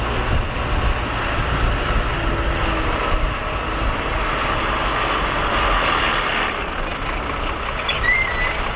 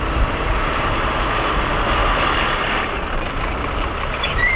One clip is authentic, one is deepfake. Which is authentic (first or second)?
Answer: first